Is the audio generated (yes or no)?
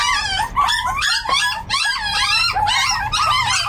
yes